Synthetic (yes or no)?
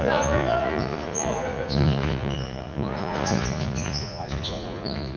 yes